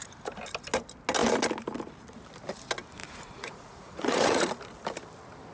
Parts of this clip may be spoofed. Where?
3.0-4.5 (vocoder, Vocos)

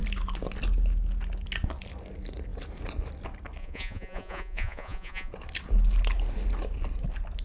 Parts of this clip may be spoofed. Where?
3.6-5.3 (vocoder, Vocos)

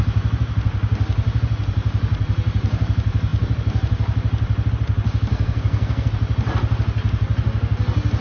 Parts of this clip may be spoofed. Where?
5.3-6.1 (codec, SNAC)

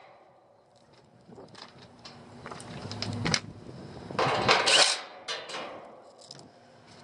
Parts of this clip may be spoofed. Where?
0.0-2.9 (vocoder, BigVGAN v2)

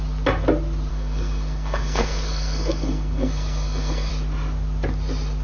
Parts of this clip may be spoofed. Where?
0.9-4.1 (codec, SNAC)